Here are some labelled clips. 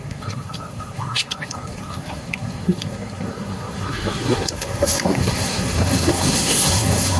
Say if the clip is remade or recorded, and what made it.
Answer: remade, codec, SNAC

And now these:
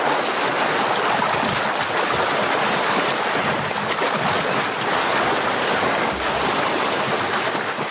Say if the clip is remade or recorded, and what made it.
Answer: recorded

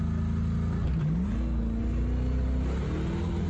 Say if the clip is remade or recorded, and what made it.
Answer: recorded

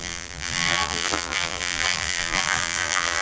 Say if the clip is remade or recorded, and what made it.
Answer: remade, vocoder, BigVGAN v2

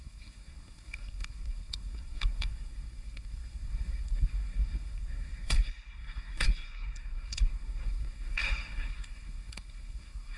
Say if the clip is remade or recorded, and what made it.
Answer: remade, codec, SNAC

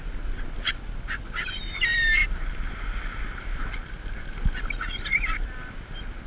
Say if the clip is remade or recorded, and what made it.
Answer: recorded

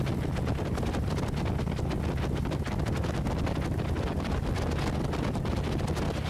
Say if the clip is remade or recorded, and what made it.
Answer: recorded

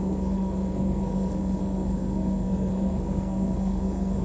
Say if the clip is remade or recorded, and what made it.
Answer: remade, codec, SNAC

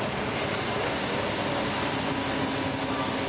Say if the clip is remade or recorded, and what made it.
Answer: recorded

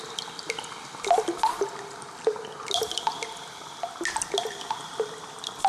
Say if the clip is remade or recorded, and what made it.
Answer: recorded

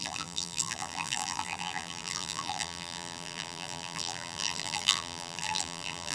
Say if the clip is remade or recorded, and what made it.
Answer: remade, vocoder, BigVGAN v2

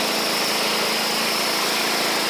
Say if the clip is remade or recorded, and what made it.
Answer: recorded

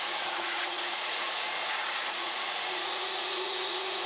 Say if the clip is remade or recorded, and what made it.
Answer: remade, vocoder, Vocos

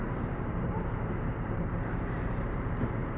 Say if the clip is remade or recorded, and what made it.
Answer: remade, vocoder, BigVGAN v2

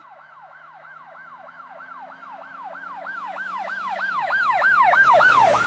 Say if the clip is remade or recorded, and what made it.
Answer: remade, autoencoder, DAC-VAE